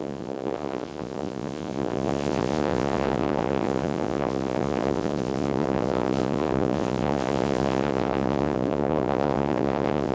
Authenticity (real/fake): fake